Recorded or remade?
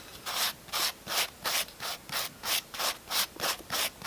remade